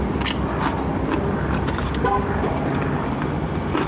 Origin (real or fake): real